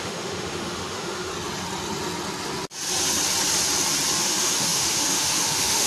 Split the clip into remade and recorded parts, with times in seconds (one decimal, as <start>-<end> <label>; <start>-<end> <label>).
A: 0.0-1.3 remade; 1.3-4.2 recorded; 4.2-5.9 remade